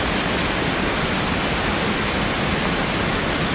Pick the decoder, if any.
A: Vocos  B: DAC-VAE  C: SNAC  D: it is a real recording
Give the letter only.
D